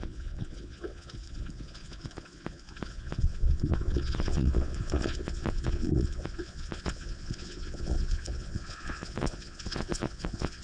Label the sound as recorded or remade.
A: remade